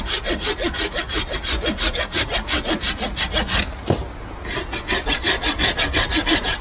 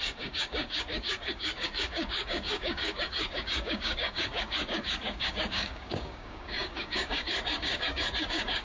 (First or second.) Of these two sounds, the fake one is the second